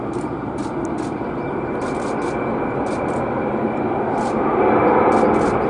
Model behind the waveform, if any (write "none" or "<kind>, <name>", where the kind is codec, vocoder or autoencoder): none